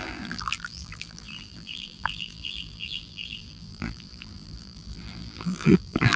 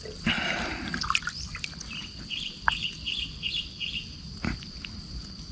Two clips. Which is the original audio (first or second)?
second